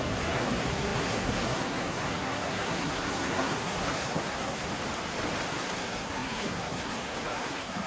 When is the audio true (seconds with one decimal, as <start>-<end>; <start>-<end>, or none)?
4.7-5.5